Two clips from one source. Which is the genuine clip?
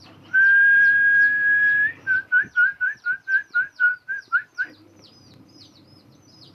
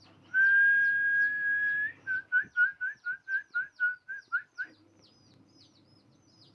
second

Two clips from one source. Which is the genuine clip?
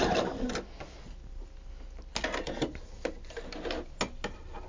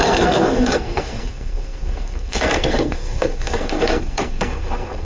first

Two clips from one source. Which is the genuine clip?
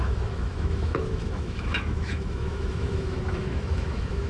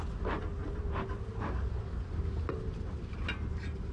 second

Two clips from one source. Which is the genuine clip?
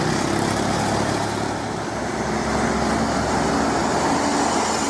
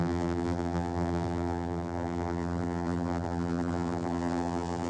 first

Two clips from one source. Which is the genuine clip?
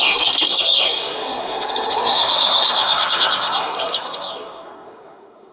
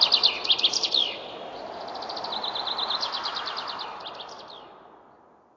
second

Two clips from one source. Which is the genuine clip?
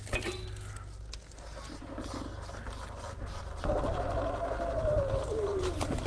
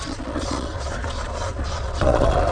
first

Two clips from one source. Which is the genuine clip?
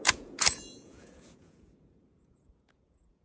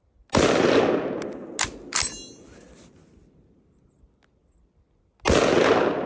second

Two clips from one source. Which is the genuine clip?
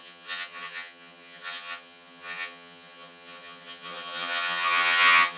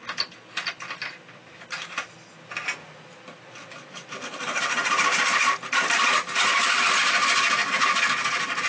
second